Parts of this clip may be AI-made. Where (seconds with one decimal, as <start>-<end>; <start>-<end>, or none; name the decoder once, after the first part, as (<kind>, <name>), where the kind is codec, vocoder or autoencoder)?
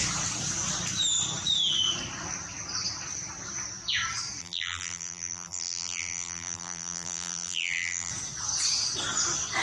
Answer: 4.4-8.1 (vocoder, BigVGAN v2)